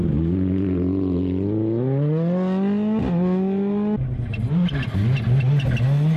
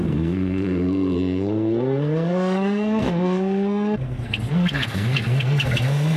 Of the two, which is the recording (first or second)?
first